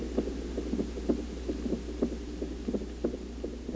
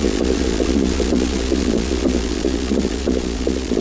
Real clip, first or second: first